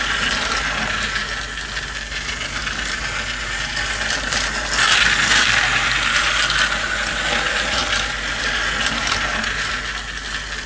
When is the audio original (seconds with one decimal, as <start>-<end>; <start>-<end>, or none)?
0.0-10.7